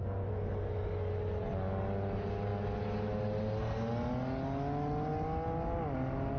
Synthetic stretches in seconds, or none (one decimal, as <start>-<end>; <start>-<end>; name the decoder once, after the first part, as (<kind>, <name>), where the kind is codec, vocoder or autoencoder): none